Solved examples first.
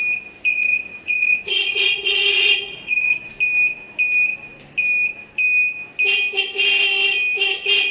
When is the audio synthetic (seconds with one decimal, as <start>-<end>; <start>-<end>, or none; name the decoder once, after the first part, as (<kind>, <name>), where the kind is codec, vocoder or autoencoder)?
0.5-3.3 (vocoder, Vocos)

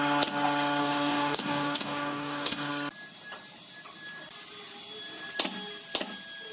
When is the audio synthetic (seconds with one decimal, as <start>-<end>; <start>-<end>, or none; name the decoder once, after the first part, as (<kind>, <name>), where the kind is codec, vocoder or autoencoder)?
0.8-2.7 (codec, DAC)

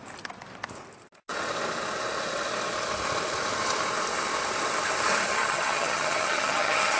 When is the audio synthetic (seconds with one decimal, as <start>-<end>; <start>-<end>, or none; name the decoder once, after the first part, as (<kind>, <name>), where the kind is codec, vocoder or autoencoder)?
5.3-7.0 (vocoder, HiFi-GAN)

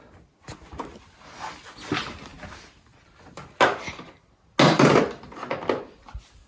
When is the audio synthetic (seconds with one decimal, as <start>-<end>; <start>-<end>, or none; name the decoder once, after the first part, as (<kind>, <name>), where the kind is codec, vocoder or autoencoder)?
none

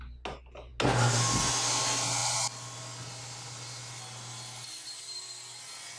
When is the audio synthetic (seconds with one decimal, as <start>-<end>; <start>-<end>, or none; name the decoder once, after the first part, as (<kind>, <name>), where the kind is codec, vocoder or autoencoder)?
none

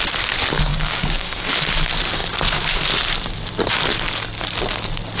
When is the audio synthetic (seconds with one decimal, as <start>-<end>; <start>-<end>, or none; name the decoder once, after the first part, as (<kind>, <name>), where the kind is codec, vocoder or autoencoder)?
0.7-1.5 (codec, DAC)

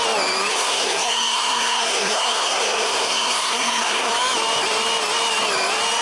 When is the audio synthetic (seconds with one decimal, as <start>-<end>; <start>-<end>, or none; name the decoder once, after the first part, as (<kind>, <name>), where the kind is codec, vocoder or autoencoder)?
0.5-4.1 (codec, SNAC)